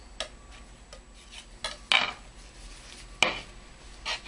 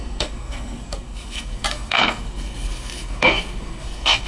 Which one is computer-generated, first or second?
second